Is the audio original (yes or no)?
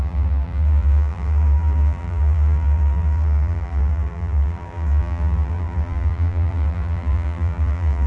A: no